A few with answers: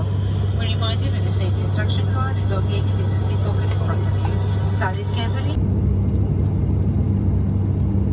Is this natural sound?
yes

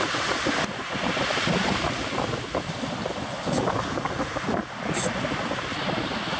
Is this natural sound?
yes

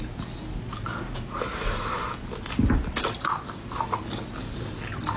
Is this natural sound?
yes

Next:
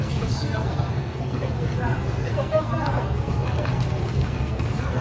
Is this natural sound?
no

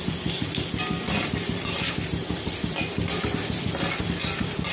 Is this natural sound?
no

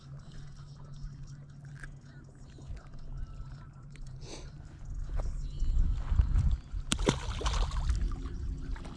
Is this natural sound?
yes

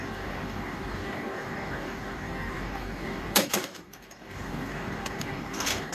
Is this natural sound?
no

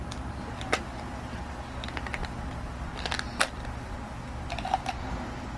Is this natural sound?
yes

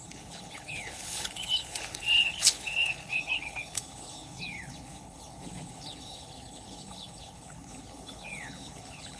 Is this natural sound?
no